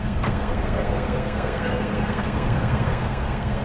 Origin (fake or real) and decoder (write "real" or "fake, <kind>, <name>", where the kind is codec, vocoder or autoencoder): fake, codec, SNAC